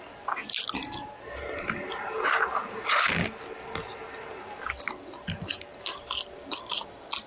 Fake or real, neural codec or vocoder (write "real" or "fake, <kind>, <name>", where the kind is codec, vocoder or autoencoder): real